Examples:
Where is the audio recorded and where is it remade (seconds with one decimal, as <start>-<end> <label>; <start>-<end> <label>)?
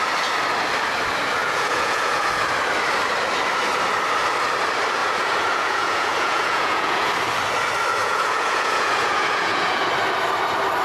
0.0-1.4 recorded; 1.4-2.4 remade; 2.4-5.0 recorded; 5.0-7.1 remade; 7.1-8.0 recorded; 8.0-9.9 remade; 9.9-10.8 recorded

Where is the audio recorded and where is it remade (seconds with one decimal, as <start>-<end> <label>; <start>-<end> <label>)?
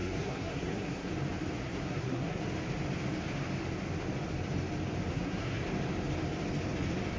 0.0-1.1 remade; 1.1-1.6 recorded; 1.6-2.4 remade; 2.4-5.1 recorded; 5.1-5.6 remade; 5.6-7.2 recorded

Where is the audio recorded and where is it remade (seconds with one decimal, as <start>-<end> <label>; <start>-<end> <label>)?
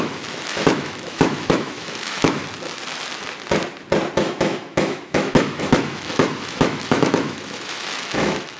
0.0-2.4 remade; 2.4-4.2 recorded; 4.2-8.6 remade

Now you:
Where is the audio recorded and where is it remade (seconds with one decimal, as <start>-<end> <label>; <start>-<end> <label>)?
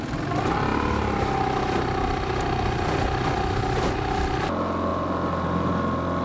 0.0-6.2 recorded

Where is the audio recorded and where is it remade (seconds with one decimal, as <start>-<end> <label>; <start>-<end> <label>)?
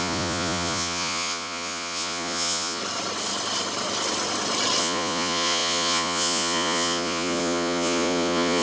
0.0-2.8 remade; 2.8-4.8 recorded; 4.8-8.6 remade